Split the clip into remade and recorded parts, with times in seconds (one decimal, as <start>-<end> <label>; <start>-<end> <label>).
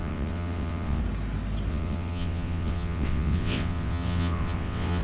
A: 0.0-1.0 remade; 1.0-1.7 recorded; 1.7-5.0 remade